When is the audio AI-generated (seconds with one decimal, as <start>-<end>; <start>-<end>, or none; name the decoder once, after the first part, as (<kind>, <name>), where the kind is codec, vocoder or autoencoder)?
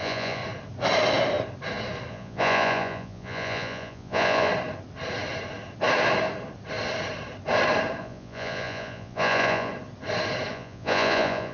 0.0-0.4 (vocoder, Vocos); 2.1-4.5; 8.0-9.7; 10.5-11.5